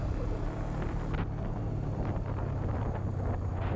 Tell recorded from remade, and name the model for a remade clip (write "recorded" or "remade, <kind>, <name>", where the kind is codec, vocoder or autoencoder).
recorded